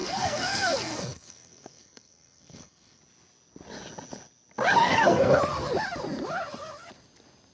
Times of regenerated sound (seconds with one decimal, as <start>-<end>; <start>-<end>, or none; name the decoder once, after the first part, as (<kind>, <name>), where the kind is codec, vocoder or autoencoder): 0.0-3.0 (codec, SNAC); 4.8-5.4